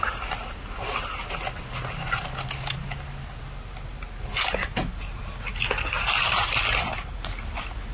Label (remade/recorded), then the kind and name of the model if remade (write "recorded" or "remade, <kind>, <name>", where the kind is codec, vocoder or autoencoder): recorded